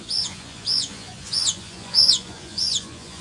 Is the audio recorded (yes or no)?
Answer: no